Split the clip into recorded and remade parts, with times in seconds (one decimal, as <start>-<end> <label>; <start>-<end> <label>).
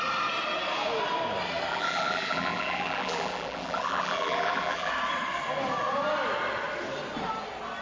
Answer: 0.0-1.7 recorded; 1.7-4.9 remade; 4.9-7.8 recorded